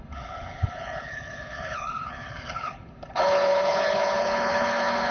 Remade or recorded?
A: remade